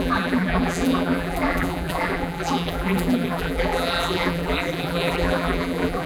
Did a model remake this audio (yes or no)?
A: yes